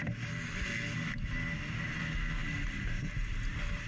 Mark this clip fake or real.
real